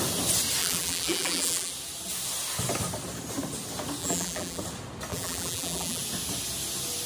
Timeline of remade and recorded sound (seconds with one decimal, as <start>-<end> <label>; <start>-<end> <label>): 0.0-0.6 recorded; 0.6-1.7 remade; 1.7-4.0 recorded; 4.0-4.6 remade; 4.6-5.1 recorded; 5.1-6.0 remade; 6.0-7.1 recorded

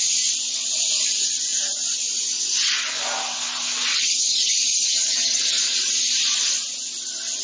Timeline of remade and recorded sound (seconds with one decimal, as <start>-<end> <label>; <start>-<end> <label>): 0.0-3.9 recorded; 3.9-5.4 remade; 5.4-7.4 recorded

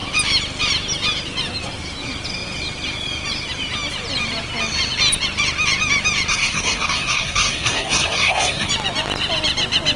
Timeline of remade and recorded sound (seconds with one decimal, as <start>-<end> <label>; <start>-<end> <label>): 0.0-6.3 recorded; 6.3-8.7 remade; 8.7-10.0 recorded

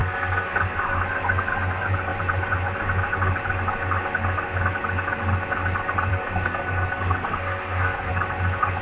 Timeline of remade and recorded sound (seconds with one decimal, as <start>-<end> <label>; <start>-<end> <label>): 0.0-1.0 remade; 1.0-6.1 recorded; 6.1-8.1 remade; 8.1-8.8 recorded

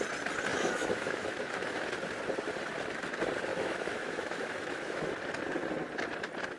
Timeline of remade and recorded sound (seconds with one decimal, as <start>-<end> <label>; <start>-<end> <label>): 0.0-0.5 recorded; 0.5-1.9 remade; 1.9-3.5 recorded; 3.5-5.1 remade; 5.1-6.6 recorded

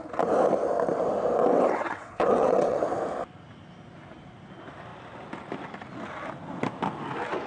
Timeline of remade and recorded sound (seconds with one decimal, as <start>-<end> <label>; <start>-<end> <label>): 0.0-1.5 recorded; 1.5-2.8 remade; 2.8-7.5 recorded

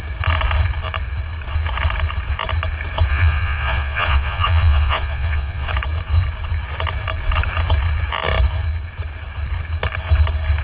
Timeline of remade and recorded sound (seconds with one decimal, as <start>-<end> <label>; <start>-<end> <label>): 0.0-3.1 recorded; 3.1-5.7 remade; 5.7-10.6 recorded

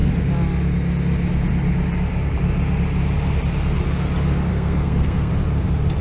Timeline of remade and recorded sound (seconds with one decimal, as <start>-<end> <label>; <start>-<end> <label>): 0.0-4.5 recorded; 4.5-5.3 remade; 5.3-6.0 recorded